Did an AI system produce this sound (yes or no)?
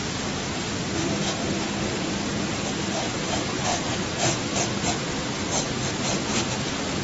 no